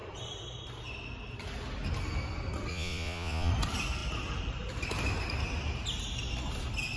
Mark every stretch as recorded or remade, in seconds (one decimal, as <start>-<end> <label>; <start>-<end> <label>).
0.0-2.7 recorded; 2.7-3.5 remade; 3.5-7.0 recorded